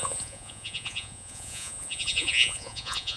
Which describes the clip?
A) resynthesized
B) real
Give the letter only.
A